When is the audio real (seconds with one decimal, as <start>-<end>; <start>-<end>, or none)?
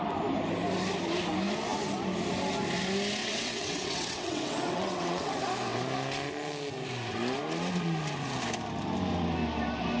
0.0-3.2; 5.3-10.0